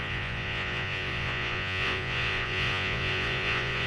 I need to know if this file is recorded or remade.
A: remade